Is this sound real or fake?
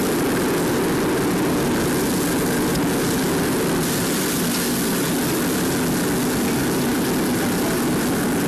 real